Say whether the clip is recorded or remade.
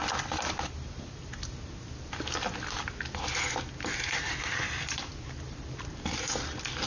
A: recorded